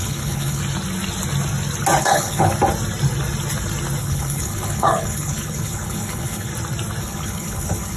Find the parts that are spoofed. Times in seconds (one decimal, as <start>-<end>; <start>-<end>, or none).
0.0-0.6; 2.0-2.5; 4.0-6.5; 7.0-8.0